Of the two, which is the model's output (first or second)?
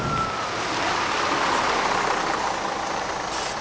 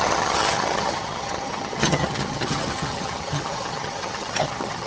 second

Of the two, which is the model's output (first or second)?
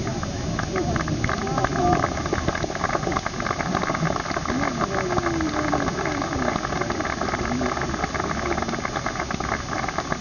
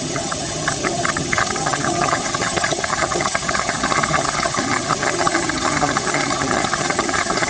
second